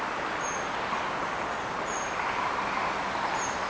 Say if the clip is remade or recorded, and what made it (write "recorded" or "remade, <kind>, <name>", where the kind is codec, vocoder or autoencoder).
recorded